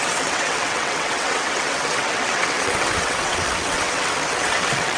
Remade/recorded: remade